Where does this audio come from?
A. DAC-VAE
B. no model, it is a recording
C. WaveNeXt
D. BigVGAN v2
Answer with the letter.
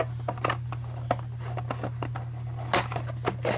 B